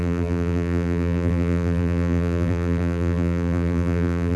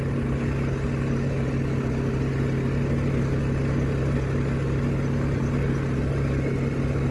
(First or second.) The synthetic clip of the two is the first